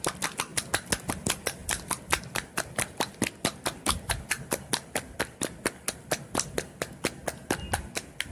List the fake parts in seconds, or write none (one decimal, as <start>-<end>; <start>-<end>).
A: none